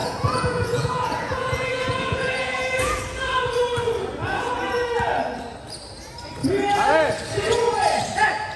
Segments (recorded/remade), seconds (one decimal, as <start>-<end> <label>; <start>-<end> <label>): 0.0-3.0 remade; 3.0-4.2 recorded; 4.2-4.9 remade; 4.9-8.6 recorded